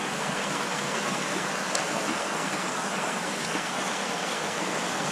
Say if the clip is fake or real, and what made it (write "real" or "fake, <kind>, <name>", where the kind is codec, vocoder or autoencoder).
fake, codec, SNAC